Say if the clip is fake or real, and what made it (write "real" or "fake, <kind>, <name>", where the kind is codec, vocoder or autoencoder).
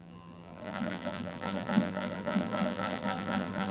fake, vocoder, BigVGAN v2